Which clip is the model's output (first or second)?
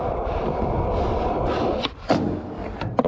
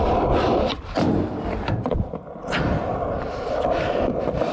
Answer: second